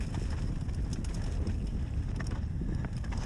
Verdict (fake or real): real